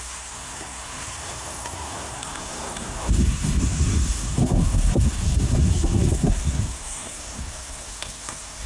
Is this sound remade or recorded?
remade